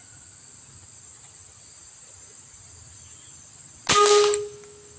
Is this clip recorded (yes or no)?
yes